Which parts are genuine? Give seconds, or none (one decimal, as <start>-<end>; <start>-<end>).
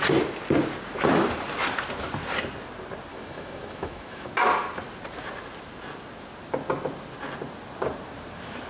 0.0-3.1; 4.3-8.7